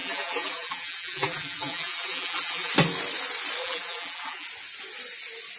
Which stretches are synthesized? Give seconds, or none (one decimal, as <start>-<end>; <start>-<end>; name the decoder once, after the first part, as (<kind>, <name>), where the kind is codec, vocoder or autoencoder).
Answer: 0.0-2.7 (vocoder, BigVGAN v2); 3.6-4.5